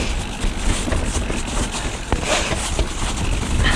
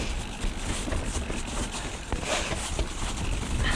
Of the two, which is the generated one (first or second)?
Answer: second